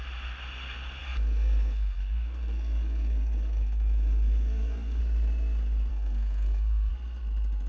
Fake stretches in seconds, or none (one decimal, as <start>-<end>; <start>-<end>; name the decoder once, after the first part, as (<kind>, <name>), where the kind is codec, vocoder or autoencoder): 1.0-5.0 (codec, SNAC); 5.9-6.9